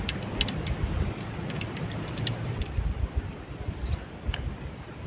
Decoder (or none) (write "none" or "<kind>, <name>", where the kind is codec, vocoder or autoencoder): none